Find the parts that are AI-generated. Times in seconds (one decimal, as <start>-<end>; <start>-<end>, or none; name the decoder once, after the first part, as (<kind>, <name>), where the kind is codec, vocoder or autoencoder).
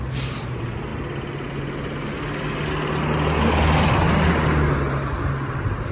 none